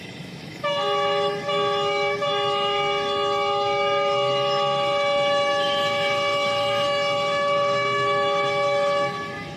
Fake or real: fake